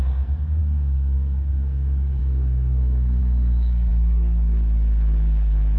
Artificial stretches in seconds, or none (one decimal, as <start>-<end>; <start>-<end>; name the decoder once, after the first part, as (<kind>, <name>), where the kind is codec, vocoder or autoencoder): 0.0-5.8 (codec, SNAC)